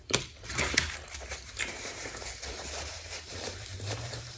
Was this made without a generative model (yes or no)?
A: no